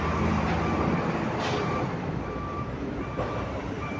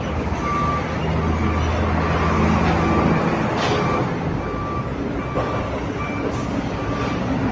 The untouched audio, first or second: second